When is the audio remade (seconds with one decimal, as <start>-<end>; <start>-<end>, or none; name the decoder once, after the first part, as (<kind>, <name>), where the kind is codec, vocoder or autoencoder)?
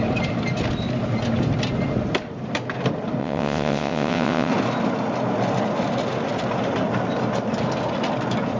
3.2-4.5 (vocoder, WaveNeXt)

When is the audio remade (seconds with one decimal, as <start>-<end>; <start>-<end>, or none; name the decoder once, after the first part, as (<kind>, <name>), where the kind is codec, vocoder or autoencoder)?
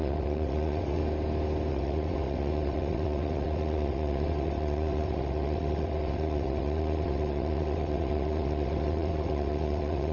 0.0-1.0 (vocoder, WaveNeXt); 1.7-10.1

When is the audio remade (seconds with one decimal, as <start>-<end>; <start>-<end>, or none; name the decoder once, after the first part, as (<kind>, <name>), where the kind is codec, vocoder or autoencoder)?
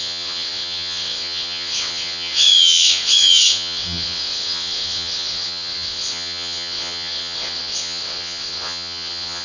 0.0-9.4 (vocoder, WaveNeXt)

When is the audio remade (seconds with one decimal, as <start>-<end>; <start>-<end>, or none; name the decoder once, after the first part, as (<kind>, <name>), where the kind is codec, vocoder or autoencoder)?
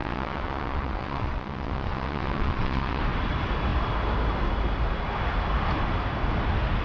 0.0-3.0 (vocoder, WaveNeXt)